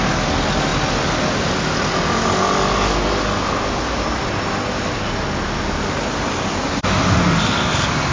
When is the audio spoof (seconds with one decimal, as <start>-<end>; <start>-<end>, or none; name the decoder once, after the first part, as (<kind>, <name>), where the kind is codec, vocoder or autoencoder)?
none